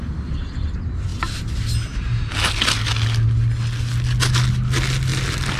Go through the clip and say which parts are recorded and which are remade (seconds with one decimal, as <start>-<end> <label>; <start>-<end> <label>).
0.0-5.6 recorded